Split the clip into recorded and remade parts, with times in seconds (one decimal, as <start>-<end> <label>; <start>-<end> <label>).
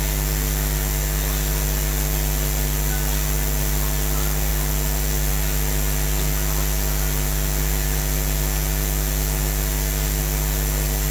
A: 0.0-11.1 recorded